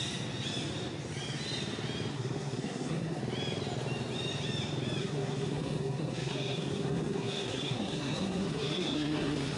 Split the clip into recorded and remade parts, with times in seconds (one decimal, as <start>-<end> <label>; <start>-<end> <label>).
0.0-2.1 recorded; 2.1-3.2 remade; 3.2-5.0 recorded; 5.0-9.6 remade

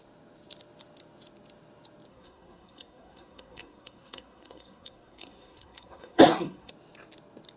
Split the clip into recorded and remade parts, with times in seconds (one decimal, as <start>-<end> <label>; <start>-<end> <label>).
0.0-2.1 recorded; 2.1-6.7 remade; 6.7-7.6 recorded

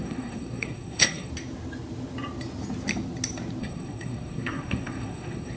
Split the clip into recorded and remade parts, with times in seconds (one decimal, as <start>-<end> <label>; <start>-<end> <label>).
0.0-1.3 remade; 1.3-3.6 recorded; 3.6-5.6 remade